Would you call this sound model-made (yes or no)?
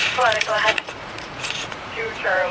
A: yes